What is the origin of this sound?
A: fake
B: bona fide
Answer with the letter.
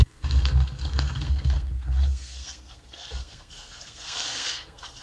A